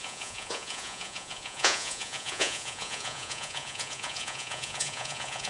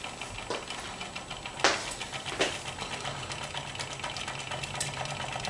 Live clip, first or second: second